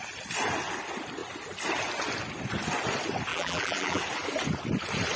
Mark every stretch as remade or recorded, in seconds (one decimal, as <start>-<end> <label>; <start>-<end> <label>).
0.0-3.3 recorded; 3.3-4.0 remade; 4.0-5.2 recorded